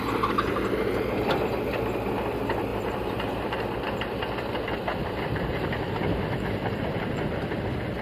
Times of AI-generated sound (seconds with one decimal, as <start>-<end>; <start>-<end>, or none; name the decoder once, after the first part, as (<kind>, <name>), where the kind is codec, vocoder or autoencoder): 2.7-3.6 (vocoder, BigVGAN v2); 5.0-7.2